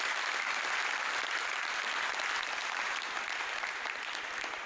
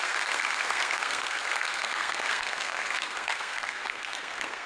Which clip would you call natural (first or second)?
first